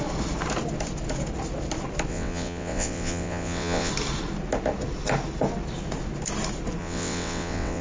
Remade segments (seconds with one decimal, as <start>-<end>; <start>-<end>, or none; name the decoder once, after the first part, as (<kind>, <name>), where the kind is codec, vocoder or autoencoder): 2.1-3.9 (vocoder, WaveNeXt); 6.8-7.8